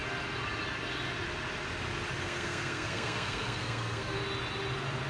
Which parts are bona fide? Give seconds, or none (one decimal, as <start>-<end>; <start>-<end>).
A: 0.0-2.2; 4.2-5.1